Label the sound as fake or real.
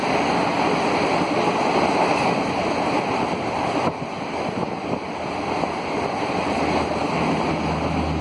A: real